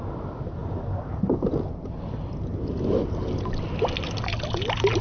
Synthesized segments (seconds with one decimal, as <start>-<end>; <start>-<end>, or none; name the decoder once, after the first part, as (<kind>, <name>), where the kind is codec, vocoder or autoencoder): none